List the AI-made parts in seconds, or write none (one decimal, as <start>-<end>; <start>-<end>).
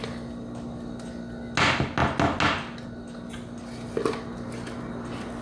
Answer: none